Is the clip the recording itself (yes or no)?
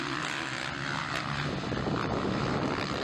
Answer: yes